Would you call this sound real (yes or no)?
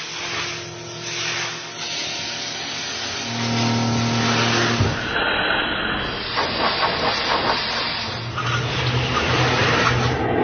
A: yes